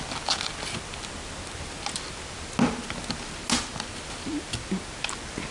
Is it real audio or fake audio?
real